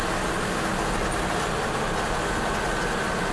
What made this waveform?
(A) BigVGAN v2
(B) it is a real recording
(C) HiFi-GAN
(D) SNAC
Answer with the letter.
B